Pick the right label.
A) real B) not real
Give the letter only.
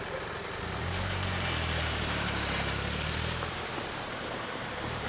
B